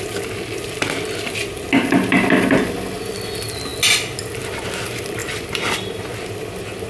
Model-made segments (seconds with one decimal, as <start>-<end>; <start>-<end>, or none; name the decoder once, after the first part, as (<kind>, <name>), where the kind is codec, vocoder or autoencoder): 5.2-6.0 (vocoder, BigVGAN v2)